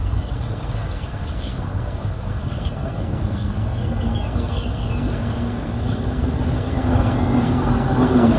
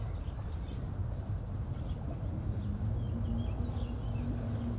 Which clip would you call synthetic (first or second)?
first